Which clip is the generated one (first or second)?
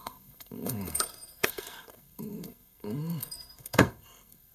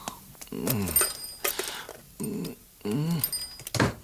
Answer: first